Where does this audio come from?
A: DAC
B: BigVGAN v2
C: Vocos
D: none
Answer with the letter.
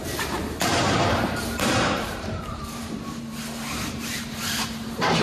B